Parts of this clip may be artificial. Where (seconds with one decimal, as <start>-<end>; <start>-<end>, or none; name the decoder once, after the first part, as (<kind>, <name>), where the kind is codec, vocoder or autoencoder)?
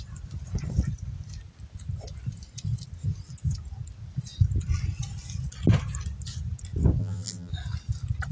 7.0-7.5 (vocoder, BigVGAN v2)